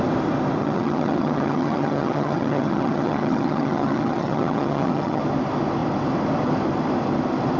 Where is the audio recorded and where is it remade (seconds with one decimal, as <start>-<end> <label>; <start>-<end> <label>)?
0.0-0.6 recorded; 0.6-5.2 remade; 5.2-7.6 recorded